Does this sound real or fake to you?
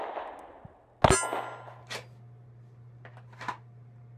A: real